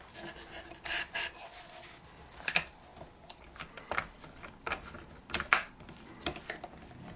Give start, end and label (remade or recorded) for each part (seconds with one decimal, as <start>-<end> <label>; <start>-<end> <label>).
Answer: 0.0-7.2 recorded